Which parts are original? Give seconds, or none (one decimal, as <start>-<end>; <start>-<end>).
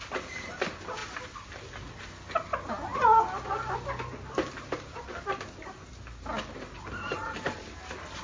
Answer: 0.0-8.2